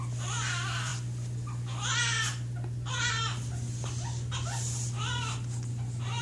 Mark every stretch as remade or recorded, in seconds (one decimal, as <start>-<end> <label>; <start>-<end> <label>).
0.0-6.2 recorded

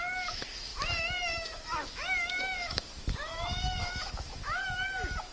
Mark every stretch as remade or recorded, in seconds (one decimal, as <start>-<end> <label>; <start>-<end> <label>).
0.0-5.3 remade

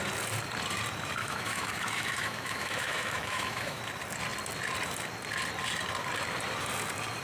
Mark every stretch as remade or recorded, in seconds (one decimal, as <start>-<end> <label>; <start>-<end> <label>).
0.0-1.2 recorded; 1.2-3.8 remade; 3.8-7.2 recorded

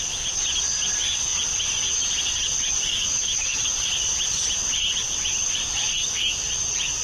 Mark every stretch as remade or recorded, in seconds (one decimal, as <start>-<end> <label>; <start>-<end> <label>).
0.0-2.9 recorded; 2.9-3.6 remade; 3.6-7.0 recorded

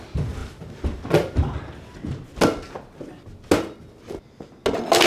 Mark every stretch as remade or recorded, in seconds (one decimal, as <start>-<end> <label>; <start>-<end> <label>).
0.0-5.1 recorded

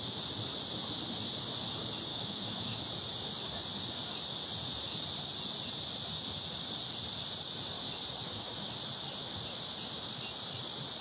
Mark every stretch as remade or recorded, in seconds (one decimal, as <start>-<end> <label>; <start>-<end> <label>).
0.0-2.1 recorded; 2.1-2.8 remade; 2.8-8.2 recorded; 8.2-8.7 remade; 8.7-11.0 recorded